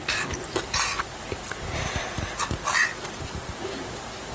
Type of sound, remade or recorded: recorded